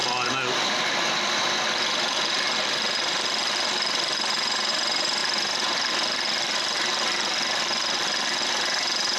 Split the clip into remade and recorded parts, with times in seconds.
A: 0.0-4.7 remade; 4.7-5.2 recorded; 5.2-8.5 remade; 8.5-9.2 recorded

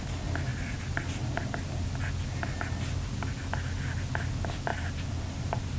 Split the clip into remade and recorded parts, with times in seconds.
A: 0.0-4.7 recorded; 4.7-5.8 remade

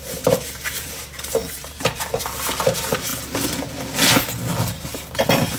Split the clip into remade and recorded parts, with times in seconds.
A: 0.0-3.1 remade; 3.1-4.6 recorded; 4.6-5.6 remade

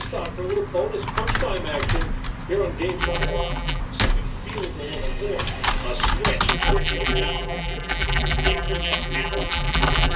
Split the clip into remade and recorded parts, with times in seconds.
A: 0.0-3.0 recorded; 3.0-3.8 remade; 3.8-6.5 recorded; 6.5-10.2 remade

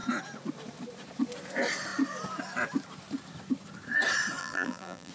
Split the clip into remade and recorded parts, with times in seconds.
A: 0.0-4.4 recorded; 4.4-5.1 remade

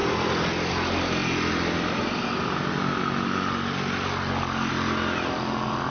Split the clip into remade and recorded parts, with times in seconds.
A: 0.0-5.9 recorded